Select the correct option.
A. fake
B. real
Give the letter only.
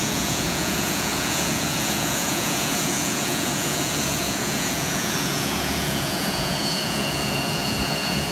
A